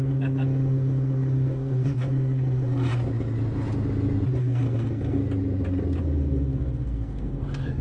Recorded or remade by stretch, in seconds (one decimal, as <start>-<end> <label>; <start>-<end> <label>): 0.0-2.9 remade; 2.9-4.4 recorded; 4.4-5.2 remade; 5.2-6.0 recorded; 6.0-7.8 remade